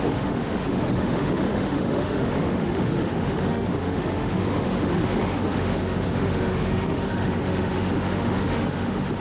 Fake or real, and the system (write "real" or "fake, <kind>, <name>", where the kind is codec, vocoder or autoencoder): fake, autoencoder, DAC-VAE